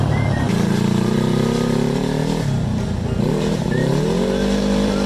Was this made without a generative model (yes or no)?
yes